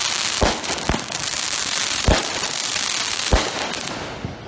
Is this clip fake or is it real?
real